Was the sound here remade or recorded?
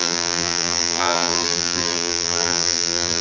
remade